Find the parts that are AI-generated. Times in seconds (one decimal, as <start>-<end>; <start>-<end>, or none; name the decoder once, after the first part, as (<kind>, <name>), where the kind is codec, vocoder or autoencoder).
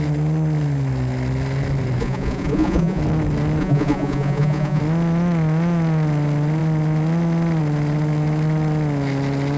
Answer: 2.0-3.0 (vocoder, Vocos); 3.6-4.8